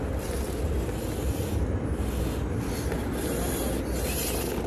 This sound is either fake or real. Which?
real